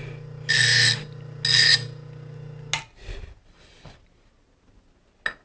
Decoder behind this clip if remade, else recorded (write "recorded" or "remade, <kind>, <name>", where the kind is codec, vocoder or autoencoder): recorded